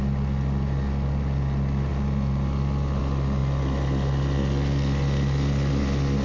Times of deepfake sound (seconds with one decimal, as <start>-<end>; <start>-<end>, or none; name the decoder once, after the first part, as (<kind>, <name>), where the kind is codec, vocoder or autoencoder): none